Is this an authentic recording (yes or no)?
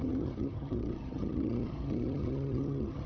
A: no